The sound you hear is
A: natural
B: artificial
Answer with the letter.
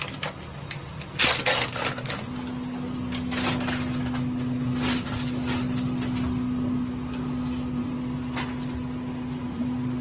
A